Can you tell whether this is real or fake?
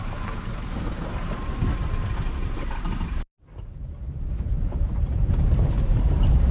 fake